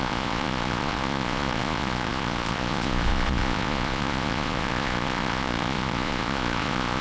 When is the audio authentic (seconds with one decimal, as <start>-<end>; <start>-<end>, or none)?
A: none